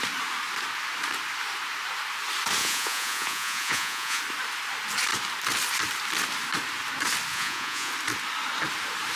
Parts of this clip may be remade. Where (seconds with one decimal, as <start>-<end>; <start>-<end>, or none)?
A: 2.6-4.2; 7.3-7.9